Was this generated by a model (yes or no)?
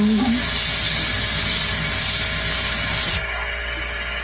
no